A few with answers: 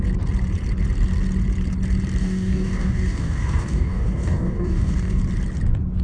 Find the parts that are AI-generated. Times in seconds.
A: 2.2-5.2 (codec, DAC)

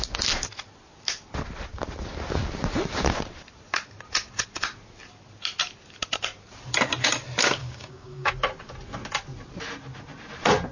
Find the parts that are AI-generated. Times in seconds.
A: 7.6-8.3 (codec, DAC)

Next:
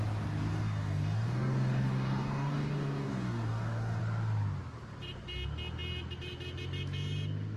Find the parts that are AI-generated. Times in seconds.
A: 0.5-4.0 (codec, DAC)

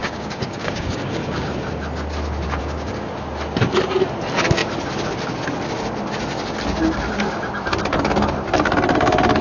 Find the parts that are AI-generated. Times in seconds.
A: 0.0-1.5 (codec, DAC); 2.6-3.1

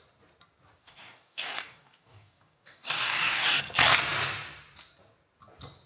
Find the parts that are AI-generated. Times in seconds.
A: 0.8-3.6 (codec, DAC)

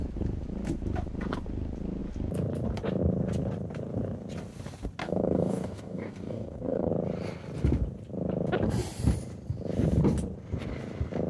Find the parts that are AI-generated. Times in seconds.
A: 5.0-6.9 (codec, DAC)

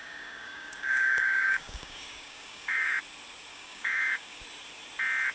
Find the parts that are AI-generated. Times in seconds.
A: 0.0-3.0 (codec, DAC); 3.5-4.4